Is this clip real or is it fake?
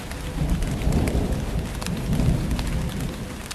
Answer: real